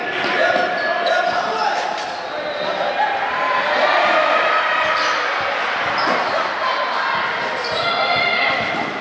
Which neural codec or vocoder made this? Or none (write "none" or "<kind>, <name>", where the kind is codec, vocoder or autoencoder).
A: none